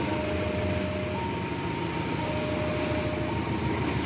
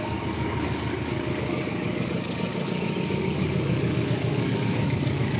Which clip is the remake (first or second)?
second